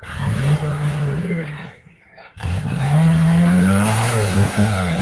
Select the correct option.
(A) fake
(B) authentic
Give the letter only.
A